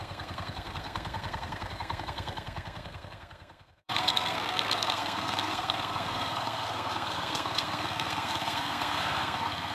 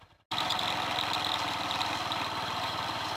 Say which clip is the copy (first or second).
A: first